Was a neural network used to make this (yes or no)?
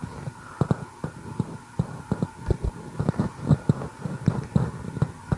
no